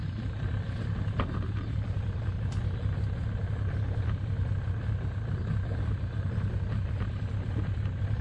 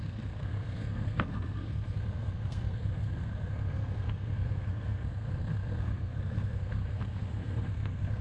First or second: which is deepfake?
second